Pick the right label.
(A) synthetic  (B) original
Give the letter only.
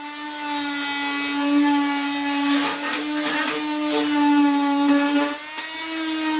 B